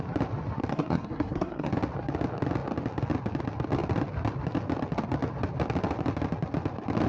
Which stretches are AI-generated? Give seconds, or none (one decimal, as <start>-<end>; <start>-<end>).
0.7-1.7